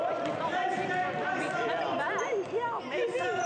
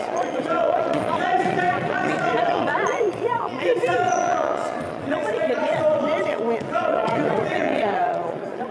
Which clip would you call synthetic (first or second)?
second